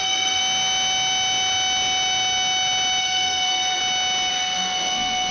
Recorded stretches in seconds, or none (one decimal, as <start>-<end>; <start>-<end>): 0.4-3.0; 3.8-4.3